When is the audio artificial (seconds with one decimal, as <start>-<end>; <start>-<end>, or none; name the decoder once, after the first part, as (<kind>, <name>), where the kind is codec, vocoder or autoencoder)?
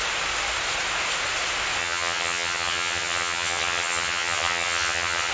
1.8-5.3 (vocoder, HiFi-GAN)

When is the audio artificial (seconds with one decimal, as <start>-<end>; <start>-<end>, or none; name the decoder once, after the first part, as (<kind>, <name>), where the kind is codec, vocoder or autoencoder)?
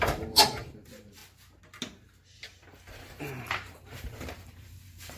0.0-1.2 (vocoder, BigVGAN v2); 3.4-5.2